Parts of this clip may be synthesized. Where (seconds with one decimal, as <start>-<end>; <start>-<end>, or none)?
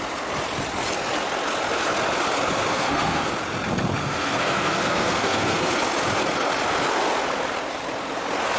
2.7-3.3; 4.0-5.7